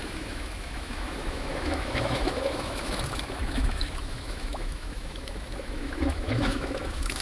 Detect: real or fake fake